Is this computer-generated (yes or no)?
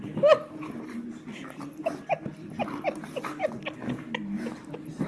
no